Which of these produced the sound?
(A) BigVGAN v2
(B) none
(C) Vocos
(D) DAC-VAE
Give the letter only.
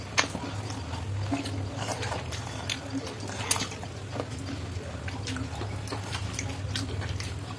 B